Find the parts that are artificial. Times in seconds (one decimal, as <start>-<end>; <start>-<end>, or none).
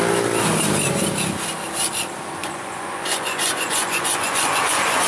2.4-5.1